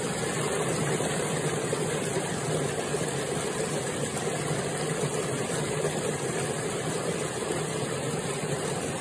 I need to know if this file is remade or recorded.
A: recorded